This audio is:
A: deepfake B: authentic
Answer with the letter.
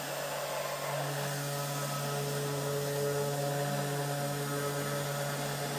B